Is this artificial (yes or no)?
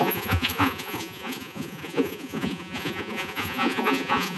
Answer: yes